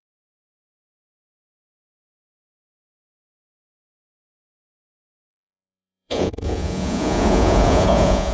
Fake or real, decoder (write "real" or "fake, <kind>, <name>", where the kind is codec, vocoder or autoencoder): fake, vocoder, Vocos